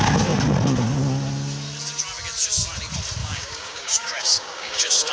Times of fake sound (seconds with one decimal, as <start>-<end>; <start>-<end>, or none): 3.2-5.1